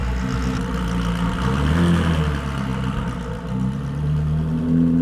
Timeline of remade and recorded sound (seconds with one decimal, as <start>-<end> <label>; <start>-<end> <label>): 0.0-2.7 recorded; 2.7-3.3 remade; 3.3-5.0 recorded